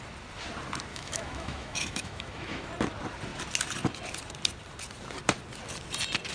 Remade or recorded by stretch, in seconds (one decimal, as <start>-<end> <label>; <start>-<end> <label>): 0.0-0.9 recorded; 0.9-2.7 remade; 2.7-6.3 recorded